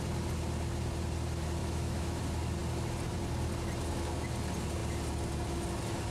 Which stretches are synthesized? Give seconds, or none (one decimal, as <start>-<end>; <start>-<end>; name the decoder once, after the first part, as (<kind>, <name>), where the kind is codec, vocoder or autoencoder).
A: 1.6-2.2 (autoencoder, DAC-VAE)